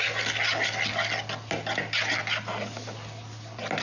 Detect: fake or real real